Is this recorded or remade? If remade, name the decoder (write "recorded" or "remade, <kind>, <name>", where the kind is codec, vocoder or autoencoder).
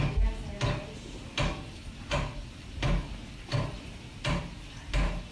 recorded